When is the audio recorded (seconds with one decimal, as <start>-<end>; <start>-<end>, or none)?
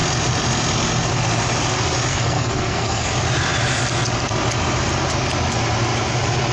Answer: 0.0-2.1; 3.1-6.5